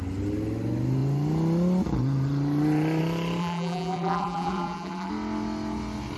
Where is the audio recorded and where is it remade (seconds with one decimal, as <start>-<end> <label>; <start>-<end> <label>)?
0.0-3.4 recorded; 3.4-5.1 remade; 5.1-6.2 recorded